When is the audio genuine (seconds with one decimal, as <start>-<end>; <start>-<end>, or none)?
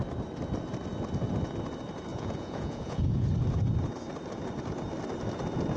0.0-2.1; 3.3-5.8